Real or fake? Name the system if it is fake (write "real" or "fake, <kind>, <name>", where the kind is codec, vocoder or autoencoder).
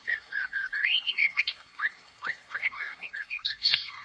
fake, codec, SNAC